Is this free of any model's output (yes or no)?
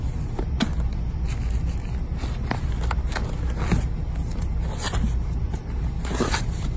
yes